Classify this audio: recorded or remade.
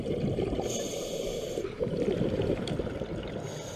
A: recorded